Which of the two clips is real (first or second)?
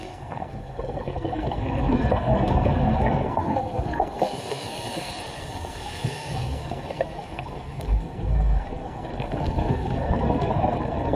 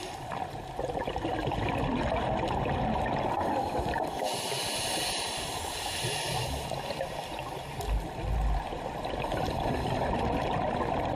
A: second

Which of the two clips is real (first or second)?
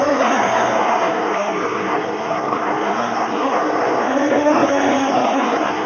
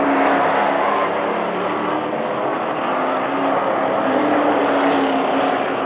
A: second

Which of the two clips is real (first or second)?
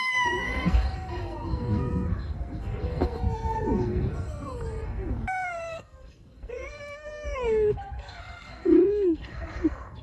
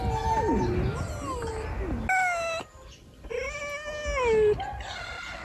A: second